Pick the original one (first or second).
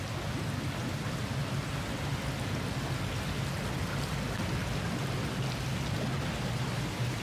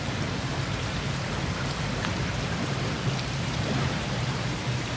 first